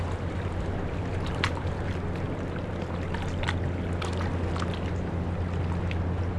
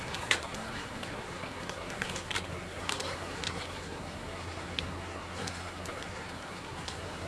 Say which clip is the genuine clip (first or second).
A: first